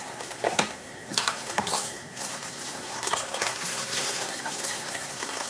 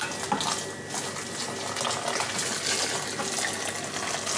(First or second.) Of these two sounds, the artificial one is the first